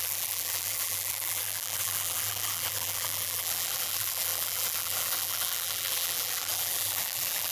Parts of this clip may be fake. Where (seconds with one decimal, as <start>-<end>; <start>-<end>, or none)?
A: 0.0-7.5